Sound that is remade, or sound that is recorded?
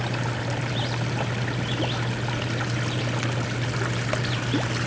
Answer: recorded